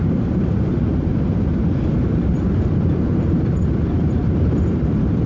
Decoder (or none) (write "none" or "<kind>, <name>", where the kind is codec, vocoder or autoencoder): vocoder, BigVGAN v2